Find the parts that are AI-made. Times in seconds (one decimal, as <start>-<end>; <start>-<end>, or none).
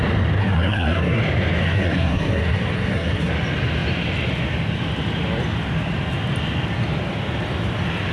0.4-1.2; 1.6-3.3